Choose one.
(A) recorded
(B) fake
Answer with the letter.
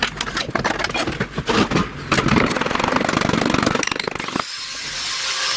A